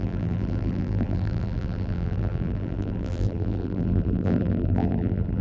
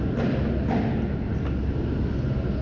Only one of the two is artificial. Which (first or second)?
first